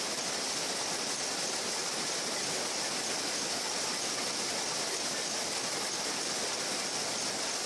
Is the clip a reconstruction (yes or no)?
no